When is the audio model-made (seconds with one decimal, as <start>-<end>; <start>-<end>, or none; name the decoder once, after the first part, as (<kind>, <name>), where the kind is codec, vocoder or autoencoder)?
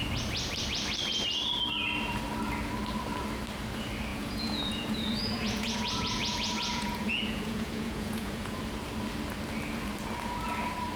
4.1-8.6 (vocoder, Vocos)